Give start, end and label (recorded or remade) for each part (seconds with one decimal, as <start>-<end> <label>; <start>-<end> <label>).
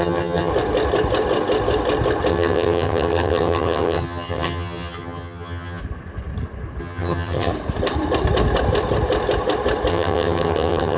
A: 0.0-0.5 remade; 0.5-2.3 recorded; 2.3-5.8 remade; 5.8-6.8 recorded; 6.8-7.5 remade; 7.5-9.9 recorded; 9.9-11.0 remade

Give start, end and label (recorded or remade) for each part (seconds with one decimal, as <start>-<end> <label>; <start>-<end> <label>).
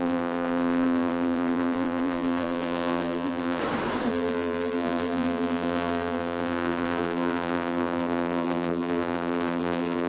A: 0.0-3.6 remade; 3.6-4.1 recorded; 4.1-10.1 remade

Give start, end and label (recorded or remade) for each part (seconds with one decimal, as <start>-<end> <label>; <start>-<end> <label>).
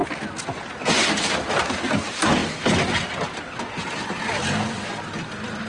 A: 0.0-5.7 recorded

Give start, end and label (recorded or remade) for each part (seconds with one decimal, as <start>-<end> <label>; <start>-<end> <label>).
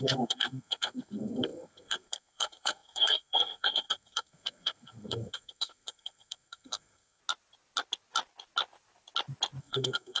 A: 0.0-7.2 remade; 7.2-9.6 recorded; 9.6-10.2 remade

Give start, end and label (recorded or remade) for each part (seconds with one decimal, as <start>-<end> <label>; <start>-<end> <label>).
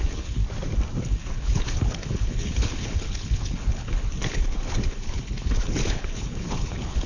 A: 0.0-0.4 remade; 0.4-1.0 recorded; 1.0-7.1 remade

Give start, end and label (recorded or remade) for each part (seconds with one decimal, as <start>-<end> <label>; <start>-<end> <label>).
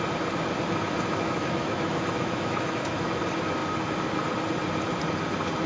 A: 0.0-1.1 recorded; 1.1-3.2 remade; 3.2-5.7 recorded